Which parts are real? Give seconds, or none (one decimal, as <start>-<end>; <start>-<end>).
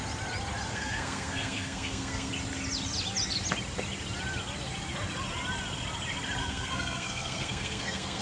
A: 0.0-0.7; 2.3-6.4